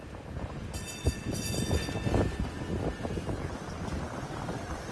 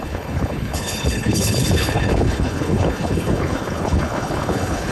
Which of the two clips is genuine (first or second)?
first